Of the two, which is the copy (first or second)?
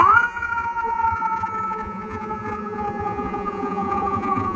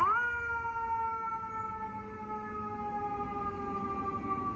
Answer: first